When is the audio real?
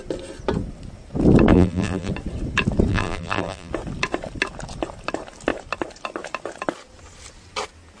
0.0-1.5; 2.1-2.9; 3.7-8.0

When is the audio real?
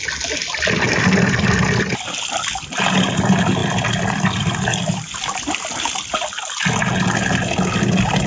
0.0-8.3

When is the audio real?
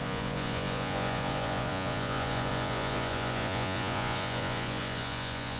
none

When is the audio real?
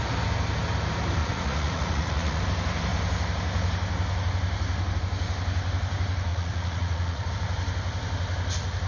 0.0-1.2; 2.4-6.3; 7.3-8.9